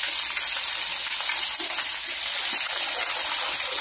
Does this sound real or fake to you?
real